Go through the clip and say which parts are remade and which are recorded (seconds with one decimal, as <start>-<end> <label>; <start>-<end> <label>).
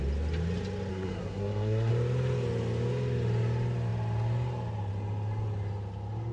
0.0-0.9 recorded; 0.9-1.9 remade; 1.9-6.3 recorded